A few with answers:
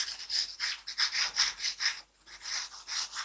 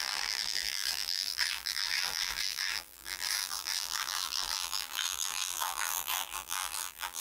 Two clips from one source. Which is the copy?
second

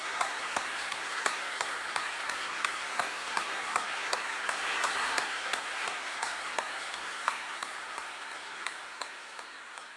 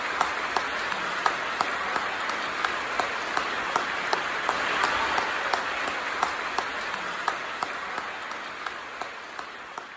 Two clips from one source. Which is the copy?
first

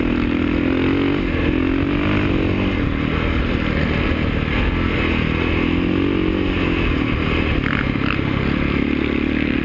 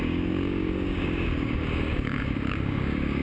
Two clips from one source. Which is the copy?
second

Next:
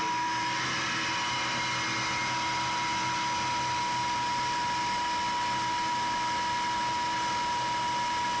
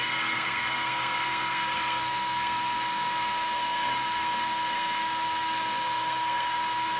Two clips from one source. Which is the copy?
second